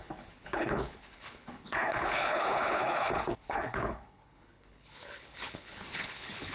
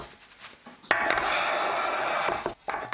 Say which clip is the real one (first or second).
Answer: second